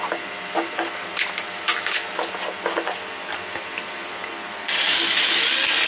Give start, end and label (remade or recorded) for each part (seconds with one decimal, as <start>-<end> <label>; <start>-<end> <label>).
0.0-4.9 recorded; 4.9-5.4 remade; 5.4-5.9 recorded